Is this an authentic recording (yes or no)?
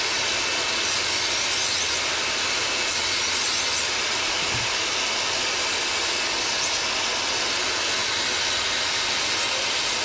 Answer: yes